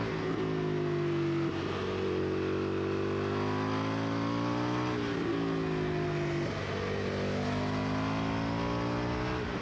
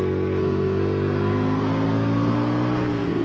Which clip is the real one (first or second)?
first